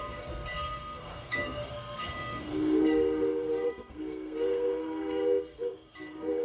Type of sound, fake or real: fake